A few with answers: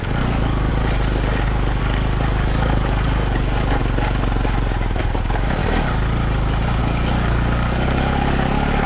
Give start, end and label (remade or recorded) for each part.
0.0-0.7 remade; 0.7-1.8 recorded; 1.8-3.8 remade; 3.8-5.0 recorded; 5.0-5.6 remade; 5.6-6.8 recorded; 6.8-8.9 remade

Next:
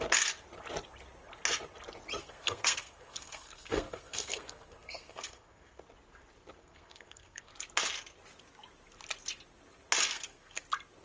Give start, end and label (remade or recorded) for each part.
0.0-2.2 recorded; 2.2-5.8 remade; 5.8-6.6 recorded; 6.6-7.5 remade; 7.5-10.1 recorded; 10.1-10.6 remade; 10.6-11.0 recorded

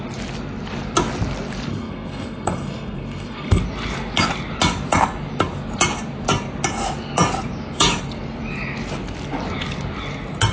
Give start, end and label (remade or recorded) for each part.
0.0-1.7 recorded; 1.7-3.6 remade; 3.6-10.5 recorded

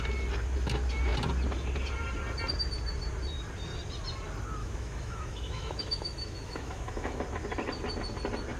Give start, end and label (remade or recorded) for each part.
0.0-4.6 recorded; 4.6-7.2 remade; 7.2-8.6 recorded